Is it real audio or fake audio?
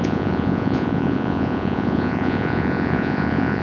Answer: fake